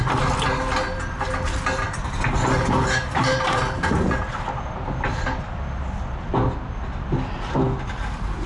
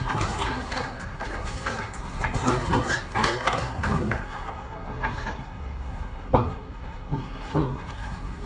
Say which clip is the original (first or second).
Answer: first